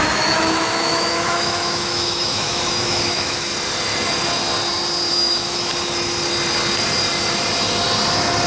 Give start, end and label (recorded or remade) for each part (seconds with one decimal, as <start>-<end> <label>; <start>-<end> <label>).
0.0-3.5 remade; 3.5-5.1 recorded; 5.1-5.7 remade; 5.7-8.5 recorded